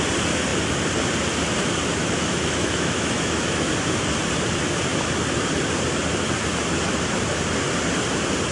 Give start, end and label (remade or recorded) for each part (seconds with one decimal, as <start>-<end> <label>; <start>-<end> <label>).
0.0-2.0 recorded; 2.0-3.7 remade; 3.7-8.5 recorded